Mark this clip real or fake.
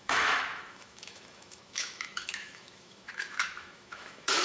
fake